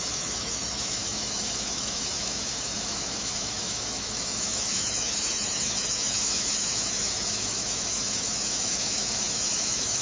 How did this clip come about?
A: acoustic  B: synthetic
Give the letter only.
B